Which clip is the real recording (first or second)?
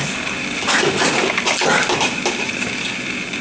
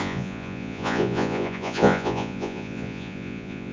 first